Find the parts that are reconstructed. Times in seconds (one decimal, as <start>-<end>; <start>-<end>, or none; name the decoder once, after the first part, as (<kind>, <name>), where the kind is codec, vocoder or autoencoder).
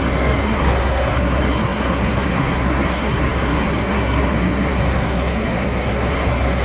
0.0-6.6 (codec, SNAC)